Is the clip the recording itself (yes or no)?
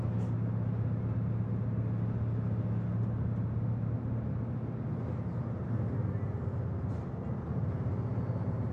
yes